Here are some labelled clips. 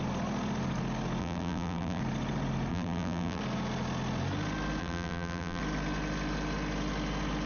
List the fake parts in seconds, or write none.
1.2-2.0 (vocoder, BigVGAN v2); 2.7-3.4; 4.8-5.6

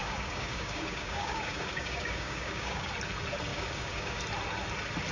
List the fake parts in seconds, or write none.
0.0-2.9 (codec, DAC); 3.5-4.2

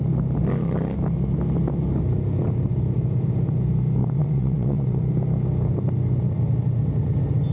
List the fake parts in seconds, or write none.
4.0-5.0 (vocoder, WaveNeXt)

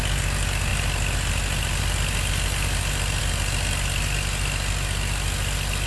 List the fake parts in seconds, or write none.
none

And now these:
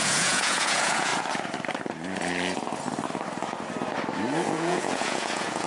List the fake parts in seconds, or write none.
0.0-1.1 (vocoder, Vocos); 4.5-5.7